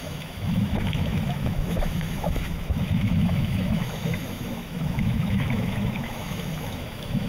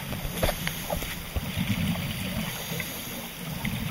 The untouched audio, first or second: second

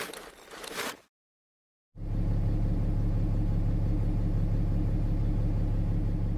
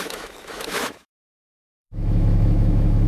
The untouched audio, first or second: first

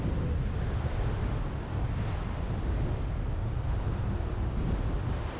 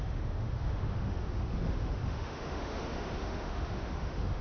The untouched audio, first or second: first